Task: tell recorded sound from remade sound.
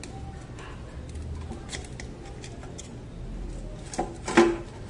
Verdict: recorded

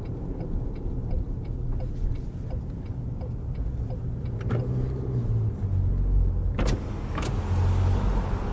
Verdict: recorded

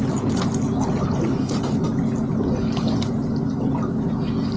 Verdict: recorded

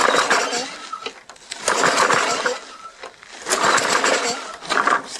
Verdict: recorded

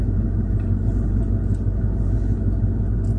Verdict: recorded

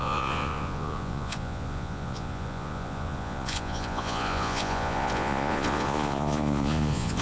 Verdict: remade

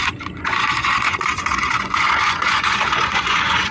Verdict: remade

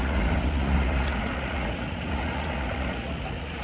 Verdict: remade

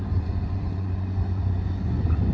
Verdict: remade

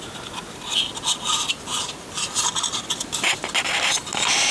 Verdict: recorded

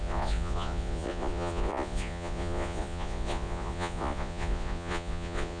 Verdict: remade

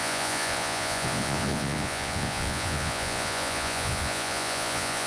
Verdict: remade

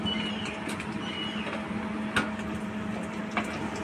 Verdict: recorded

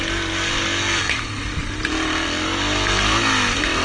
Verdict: recorded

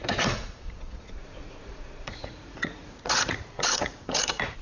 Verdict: remade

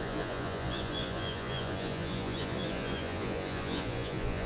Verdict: remade